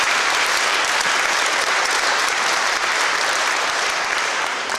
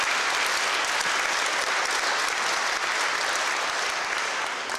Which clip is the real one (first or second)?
second